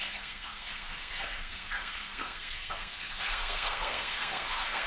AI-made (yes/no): yes